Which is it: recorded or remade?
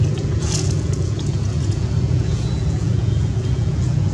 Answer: remade